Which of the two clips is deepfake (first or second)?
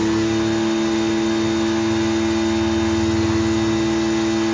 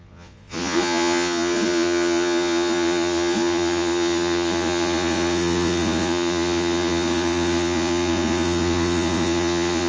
second